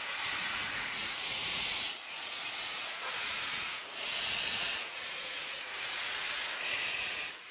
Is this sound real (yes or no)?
no